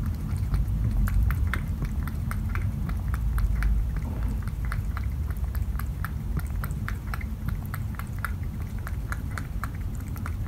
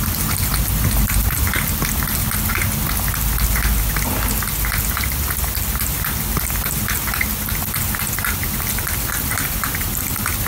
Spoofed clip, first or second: first